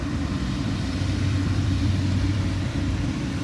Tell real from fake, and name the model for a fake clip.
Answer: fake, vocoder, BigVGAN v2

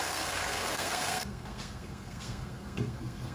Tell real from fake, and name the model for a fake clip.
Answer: fake, codec, SNAC